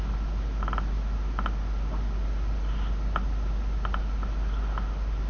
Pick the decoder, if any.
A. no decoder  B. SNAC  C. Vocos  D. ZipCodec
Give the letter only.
A